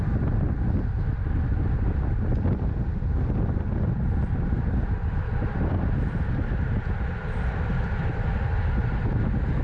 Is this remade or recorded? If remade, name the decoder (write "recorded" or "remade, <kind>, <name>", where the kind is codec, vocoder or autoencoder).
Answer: recorded